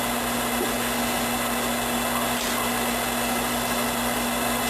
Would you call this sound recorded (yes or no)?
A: yes